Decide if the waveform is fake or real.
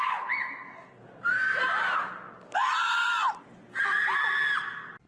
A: real